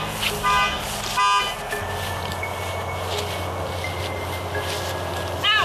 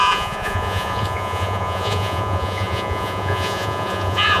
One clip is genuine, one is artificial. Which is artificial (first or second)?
second